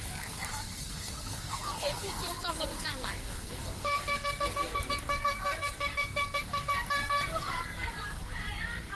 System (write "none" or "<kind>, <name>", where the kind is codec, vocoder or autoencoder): codec, SNAC